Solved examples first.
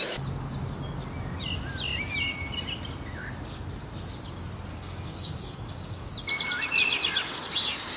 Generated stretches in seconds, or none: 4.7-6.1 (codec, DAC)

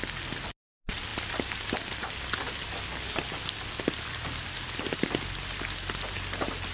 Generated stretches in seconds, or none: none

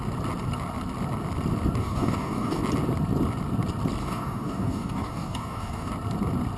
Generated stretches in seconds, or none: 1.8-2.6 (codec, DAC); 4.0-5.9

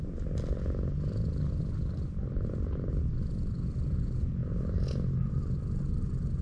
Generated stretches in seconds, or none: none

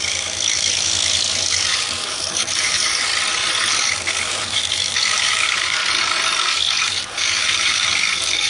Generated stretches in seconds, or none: 0.0-3.1 (codec, DAC); 3.8-5.8; 6.4-8.5

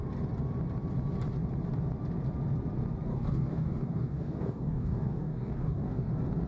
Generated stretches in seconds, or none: 3.1-6.1 (codec, DAC)

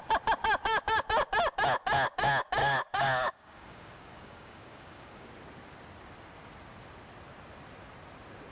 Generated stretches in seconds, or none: 2.6-5.3 (codec, DAC)

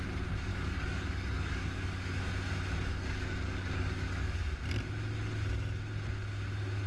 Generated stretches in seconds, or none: 0.5-2.3 (codec, DAC); 2.9-4.5